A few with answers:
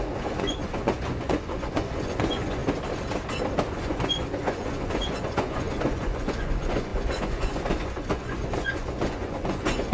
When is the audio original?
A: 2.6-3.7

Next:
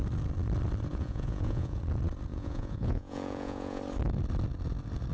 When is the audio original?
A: 0.0-0.9; 1.8-2.3; 3.8-5.1

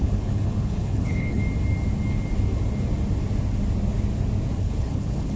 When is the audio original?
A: 1.4-4.6